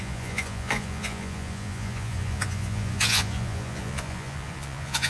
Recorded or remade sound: remade